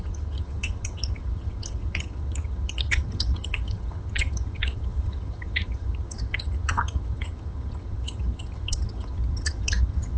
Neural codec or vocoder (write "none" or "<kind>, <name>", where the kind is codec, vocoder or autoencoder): vocoder, HiFi-GAN